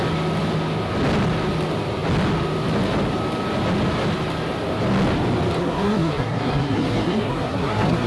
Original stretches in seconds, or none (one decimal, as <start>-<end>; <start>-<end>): 0.0-5.6